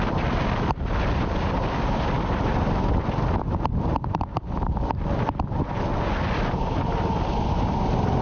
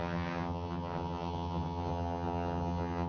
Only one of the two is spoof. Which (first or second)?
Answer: second